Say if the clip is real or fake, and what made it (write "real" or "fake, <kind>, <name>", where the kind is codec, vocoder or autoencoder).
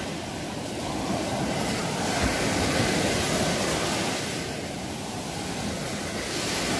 real